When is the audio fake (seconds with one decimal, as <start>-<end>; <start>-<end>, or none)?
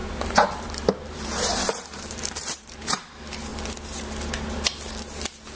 0.0-3.1